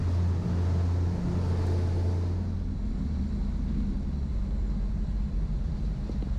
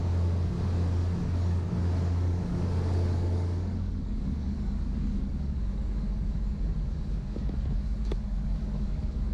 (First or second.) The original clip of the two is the first